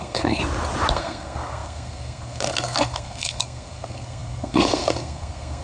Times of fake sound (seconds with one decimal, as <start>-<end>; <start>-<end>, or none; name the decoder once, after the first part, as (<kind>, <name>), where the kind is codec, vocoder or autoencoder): 0.0-0.4 (codec, SNAC); 0.9-5.6